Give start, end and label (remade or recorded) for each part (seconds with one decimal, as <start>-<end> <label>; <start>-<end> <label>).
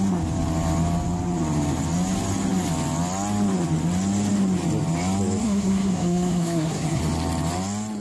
0.0-5.4 recorded; 5.4-7.0 remade; 7.0-8.0 recorded